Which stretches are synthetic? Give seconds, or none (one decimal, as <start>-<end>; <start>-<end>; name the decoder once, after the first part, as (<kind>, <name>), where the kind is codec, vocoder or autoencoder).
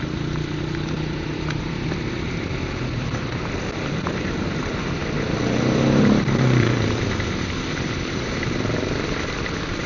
0.0-5.0 (vocoder, BigVGAN v2); 6.0-9.9